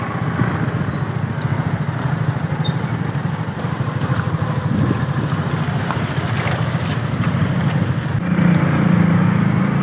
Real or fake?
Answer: real